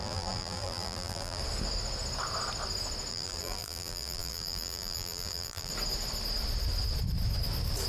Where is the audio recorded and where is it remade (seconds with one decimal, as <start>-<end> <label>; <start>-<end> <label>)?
0.0-1.4 remade; 1.4-3.1 recorded; 3.1-5.7 remade; 5.7-7.9 recorded